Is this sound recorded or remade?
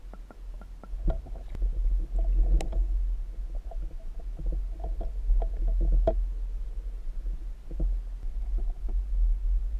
recorded